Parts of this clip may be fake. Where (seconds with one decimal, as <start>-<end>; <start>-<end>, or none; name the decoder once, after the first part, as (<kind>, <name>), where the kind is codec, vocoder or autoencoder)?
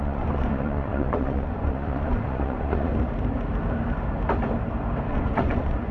0.0-2.9 (vocoder, Vocos); 5.1-5.9